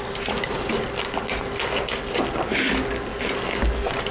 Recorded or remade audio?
recorded